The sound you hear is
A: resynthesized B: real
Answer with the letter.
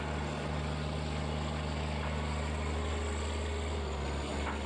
B